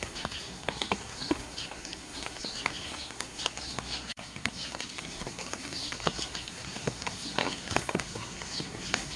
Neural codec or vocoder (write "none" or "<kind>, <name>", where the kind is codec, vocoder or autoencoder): codec, SNAC